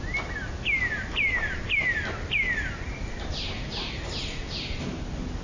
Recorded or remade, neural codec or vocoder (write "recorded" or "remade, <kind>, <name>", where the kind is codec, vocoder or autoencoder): recorded